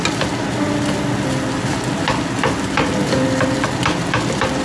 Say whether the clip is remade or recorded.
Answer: recorded